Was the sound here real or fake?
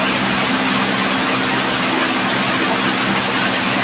real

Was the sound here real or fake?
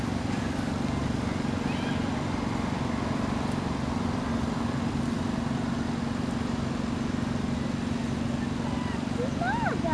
real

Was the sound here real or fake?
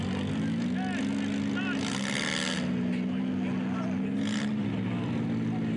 real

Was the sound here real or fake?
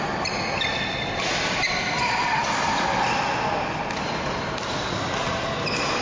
real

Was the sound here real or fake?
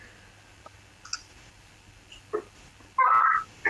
real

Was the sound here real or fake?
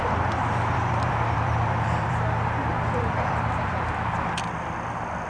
fake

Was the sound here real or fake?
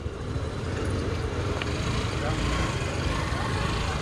real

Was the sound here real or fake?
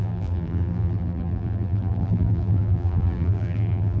fake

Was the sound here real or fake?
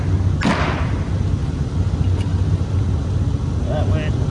real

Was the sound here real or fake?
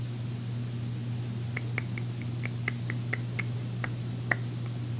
real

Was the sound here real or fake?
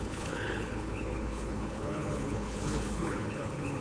fake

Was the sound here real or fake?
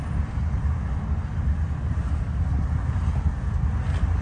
real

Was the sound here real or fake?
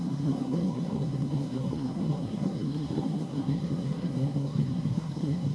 fake